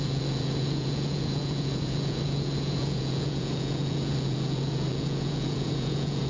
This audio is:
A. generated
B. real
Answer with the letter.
A